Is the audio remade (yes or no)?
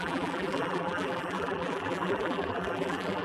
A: yes